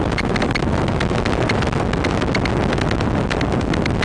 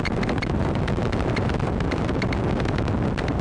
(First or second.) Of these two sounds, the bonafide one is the first